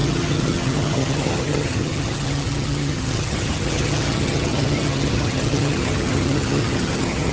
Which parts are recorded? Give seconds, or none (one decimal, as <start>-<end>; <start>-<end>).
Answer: none

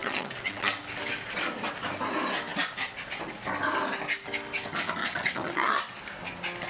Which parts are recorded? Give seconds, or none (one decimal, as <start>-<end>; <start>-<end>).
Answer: 0.8-5.0; 5.8-6.7

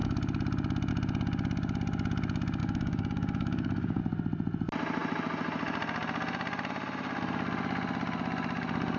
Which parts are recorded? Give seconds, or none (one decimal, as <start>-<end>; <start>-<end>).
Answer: 0.0-2.6; 4.0-9.0